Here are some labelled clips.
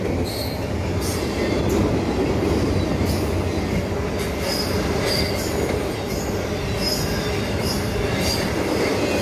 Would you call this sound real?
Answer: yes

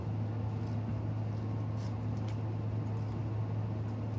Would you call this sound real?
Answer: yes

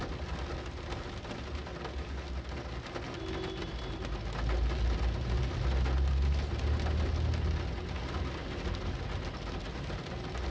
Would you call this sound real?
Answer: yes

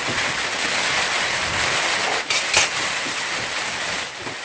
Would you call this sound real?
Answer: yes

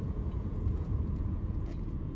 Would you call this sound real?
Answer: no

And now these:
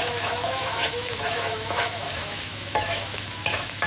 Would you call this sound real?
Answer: no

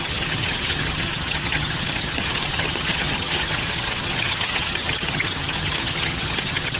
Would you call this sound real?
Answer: no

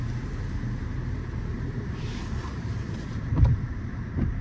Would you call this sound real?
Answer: no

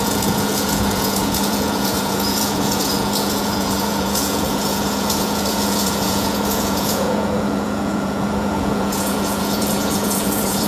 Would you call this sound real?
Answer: no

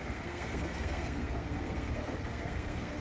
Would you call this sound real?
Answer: no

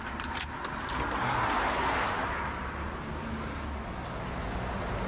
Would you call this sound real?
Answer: yes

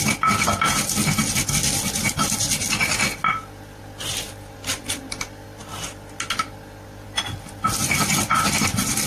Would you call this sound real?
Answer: yes